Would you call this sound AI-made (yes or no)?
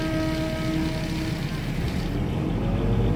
no